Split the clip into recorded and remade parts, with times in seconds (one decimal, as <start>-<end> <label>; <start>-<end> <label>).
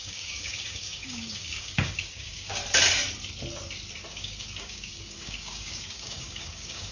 0.0-2.6 remade; 2.6-4.1 recorded; 4.1-6.9 remade